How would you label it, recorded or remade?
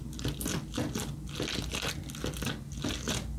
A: recorded